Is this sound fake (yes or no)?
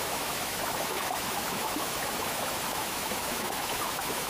yes